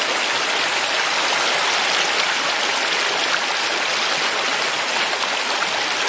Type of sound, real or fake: real